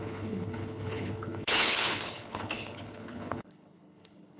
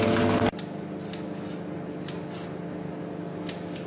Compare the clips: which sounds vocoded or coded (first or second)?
first